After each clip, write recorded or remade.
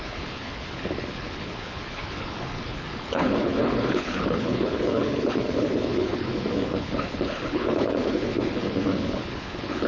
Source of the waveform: remade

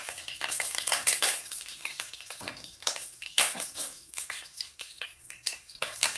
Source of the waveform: remade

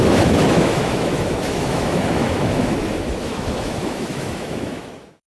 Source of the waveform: remade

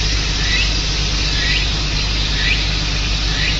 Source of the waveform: recorded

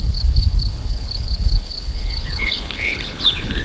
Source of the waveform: remade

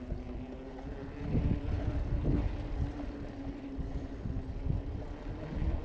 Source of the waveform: recorded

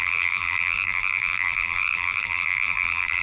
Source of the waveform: remade